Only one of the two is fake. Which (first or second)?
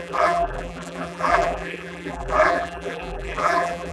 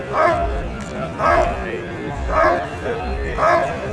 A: first